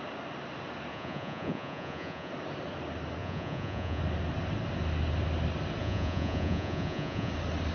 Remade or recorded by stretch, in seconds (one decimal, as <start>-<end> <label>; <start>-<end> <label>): 0.0-0.9 recorded; 0.9-2.3 remade; 2.3-3.2 recorded; 3.2-4.0 remade; 4.0-5.8 recorded; 5.8-7.3 remade; 7.3-7.7 recorded